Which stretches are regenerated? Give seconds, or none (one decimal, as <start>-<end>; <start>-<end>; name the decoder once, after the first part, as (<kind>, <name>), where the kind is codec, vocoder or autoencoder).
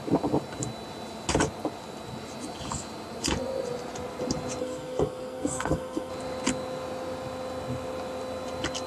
4.6-6.1 (codec, SNAC)